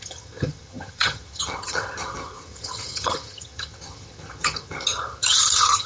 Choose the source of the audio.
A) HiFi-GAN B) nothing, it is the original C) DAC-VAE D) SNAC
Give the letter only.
A